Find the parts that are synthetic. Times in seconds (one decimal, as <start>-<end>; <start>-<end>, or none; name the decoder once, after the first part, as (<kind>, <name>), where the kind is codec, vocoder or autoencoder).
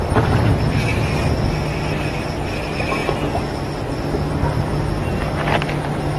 none